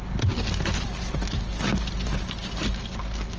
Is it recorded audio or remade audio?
recorded